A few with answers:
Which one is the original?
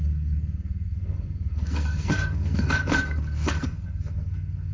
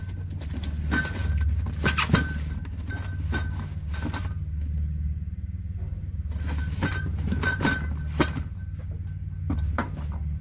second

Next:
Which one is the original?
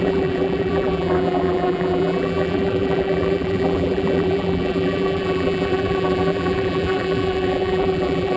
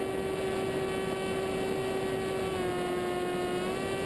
second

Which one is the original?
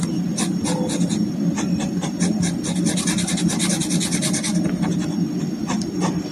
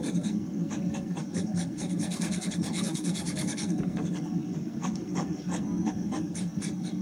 first